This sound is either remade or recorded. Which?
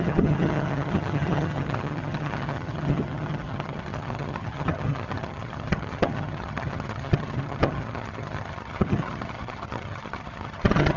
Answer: remade